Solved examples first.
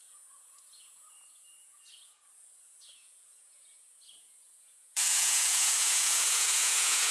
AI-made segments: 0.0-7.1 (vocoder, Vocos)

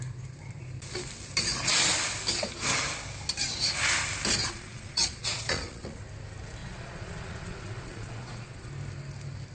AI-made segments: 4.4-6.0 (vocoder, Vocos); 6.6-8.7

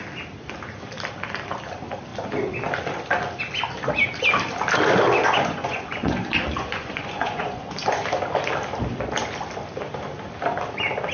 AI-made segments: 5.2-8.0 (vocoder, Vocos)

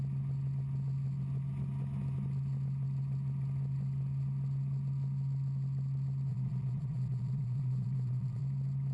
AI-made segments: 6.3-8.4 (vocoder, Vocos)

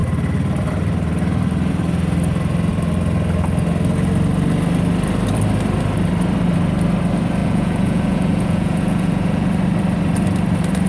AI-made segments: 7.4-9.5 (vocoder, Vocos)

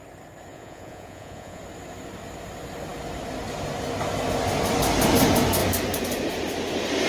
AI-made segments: 0.5-1.6 (vocoder, Vocos)

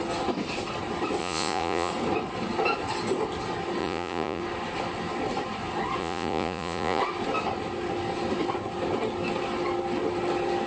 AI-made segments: 1.2-1.9 (vocoder, Vocos); 3.8-4.4; 6.0-7.0

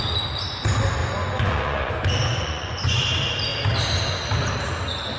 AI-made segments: 1.0-1.9 (vocoder, Vocos); 2.3-3.0